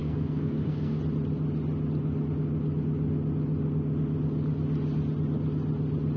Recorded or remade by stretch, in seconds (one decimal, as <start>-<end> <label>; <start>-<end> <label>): 0.0-1.0 remade; 1.0-6.2 recorded